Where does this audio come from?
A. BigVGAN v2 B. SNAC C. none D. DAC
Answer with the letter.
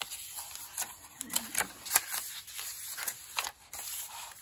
C